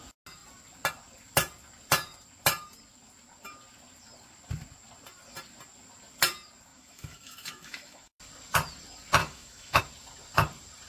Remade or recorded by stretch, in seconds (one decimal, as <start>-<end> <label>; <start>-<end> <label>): 0.0-6.7 recorded; 6.7-8.2 remade; 8.2-9.2 recorded; 9.2-9.8 remade; 9.8-10.9 recorded